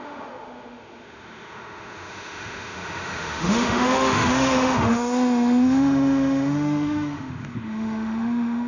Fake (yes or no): yes